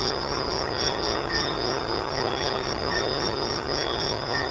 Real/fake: fake